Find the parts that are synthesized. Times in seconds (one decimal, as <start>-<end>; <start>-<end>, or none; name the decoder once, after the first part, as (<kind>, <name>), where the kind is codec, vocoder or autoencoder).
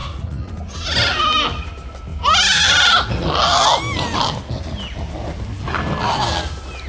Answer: 0.0-0.5 (vocoder, Vocos)